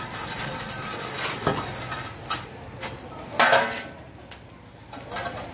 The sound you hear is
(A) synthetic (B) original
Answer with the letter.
B